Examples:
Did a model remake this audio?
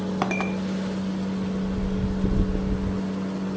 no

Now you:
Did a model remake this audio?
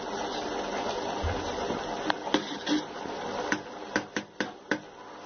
no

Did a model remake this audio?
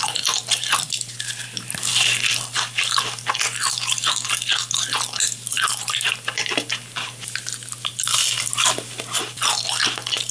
no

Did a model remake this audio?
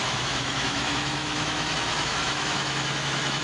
yes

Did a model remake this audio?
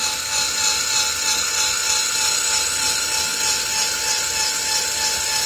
no